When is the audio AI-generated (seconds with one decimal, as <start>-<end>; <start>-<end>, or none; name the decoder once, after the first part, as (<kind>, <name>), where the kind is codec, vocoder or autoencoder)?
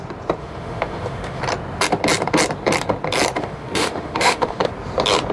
0.4-1.4 (autoencoder, DAC-VAE); 3.4-4.7